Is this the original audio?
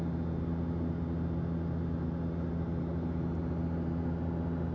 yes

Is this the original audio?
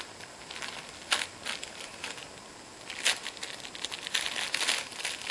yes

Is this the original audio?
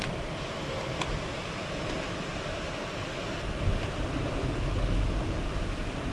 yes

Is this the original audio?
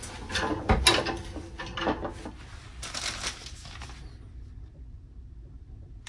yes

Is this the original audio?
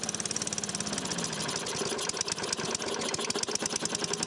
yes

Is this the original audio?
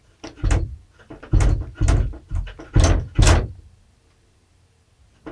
yes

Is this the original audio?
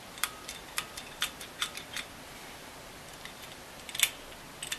yes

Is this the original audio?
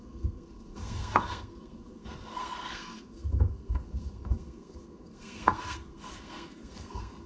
no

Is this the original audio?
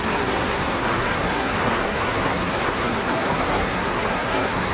no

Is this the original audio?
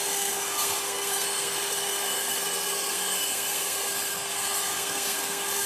no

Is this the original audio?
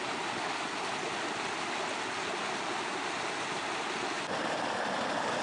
yes